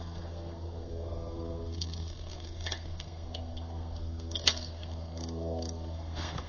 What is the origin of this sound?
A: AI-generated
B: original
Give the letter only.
A